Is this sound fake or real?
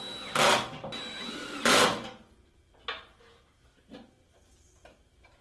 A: real